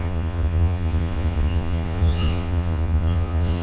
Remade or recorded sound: remade